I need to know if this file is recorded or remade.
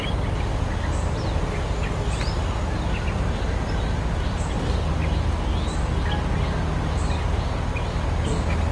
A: recorded